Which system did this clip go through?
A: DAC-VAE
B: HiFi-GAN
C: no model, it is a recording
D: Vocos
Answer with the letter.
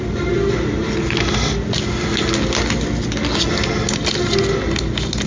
C